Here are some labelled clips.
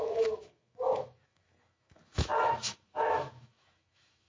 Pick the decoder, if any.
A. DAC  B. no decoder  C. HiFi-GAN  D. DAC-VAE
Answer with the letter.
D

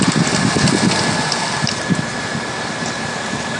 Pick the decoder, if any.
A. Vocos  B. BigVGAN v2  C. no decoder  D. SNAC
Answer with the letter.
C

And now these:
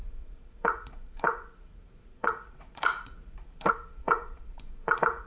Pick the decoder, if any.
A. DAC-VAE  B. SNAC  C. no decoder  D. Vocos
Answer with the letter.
D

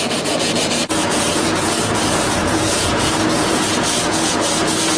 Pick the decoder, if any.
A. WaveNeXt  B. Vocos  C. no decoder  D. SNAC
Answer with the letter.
B